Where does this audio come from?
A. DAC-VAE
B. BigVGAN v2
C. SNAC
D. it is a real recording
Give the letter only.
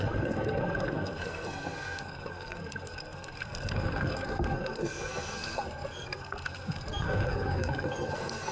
C